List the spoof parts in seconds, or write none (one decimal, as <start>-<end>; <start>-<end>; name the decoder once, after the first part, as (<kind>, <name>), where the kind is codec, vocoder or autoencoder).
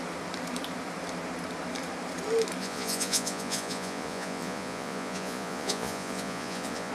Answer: 2.6-6.9 (vocoder, Vocos)